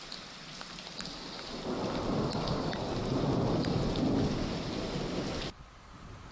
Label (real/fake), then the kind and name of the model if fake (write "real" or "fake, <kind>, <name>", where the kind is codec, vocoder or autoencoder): real